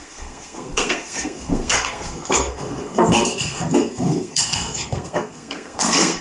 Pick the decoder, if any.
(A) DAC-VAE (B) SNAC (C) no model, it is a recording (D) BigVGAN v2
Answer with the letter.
B